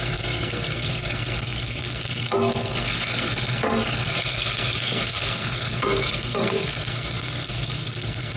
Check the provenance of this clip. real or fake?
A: fake